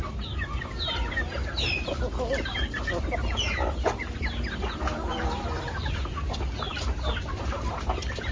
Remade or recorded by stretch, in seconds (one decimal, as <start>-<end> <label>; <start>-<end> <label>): 0.0-8.3 recorded